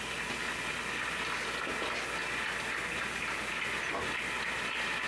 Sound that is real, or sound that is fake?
real